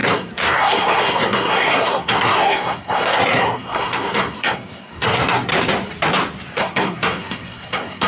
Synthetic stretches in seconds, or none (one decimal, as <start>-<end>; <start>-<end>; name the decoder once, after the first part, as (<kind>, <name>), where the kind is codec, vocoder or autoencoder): 0.0-5.5 (codec, SNAC); 6.5-8.1